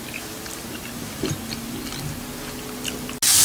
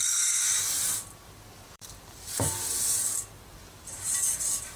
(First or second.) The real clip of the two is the first